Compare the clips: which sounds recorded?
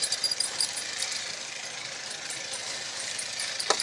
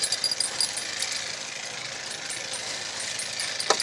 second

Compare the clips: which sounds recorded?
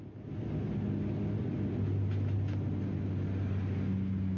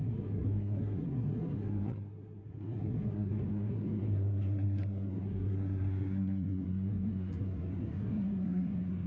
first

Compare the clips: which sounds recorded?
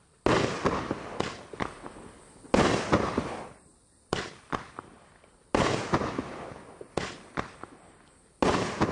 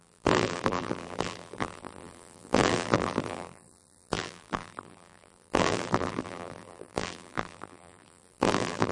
first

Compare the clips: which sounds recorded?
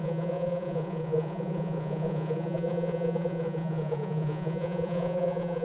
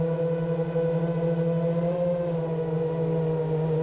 second